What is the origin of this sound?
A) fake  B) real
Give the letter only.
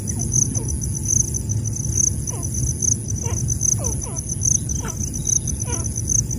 B